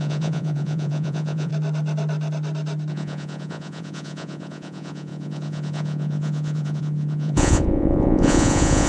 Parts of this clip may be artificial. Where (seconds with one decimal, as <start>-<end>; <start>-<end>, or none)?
0.0-1.5; 2.9-8.9